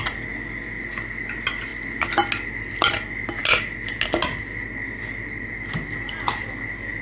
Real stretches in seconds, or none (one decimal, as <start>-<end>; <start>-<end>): 0.0-7.0